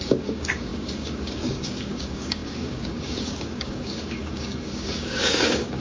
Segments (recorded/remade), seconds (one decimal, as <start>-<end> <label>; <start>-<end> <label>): 0.0-5.8 remade